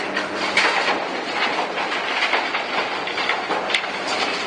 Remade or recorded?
recorded